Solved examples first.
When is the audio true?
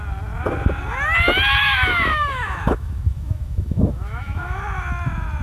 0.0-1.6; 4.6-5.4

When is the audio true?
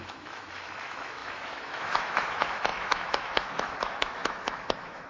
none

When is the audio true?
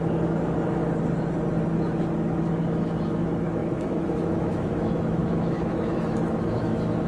0.8-2.2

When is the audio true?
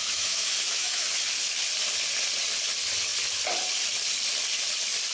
1.2-5.1